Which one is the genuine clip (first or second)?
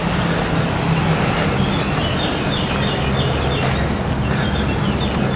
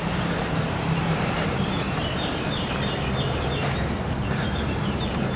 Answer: first